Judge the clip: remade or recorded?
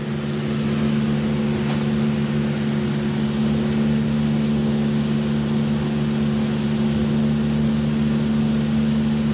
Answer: recorded